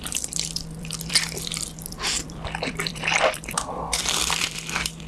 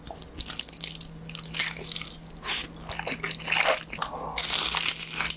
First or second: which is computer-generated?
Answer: first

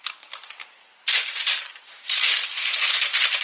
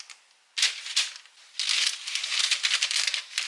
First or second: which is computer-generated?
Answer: first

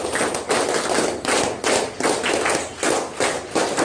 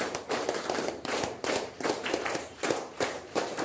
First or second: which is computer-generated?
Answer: second